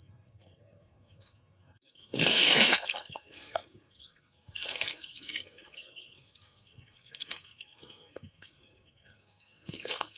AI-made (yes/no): yes